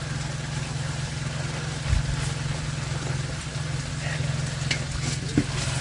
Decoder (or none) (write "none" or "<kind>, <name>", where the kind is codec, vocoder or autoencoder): none